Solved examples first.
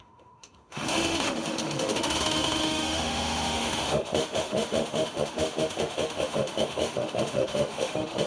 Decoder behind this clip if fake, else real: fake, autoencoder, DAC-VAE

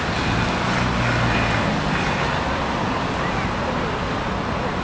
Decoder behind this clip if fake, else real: real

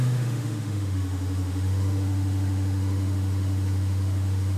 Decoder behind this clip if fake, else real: fake, autoencoder, DAC-VAE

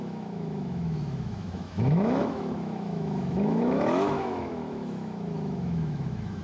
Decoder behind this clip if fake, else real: fake, autoencoder, DAC-VAE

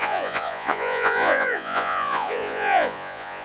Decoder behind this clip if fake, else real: fake, vocoder, Vocos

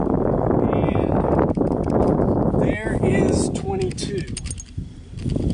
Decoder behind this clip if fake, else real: real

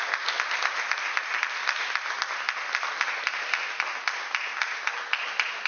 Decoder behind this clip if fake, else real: real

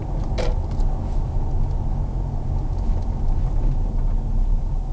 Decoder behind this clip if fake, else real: real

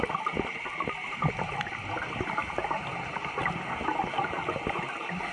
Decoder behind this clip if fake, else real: real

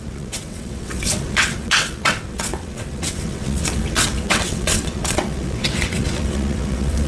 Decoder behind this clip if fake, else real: fake, vocoder, WaveNeXt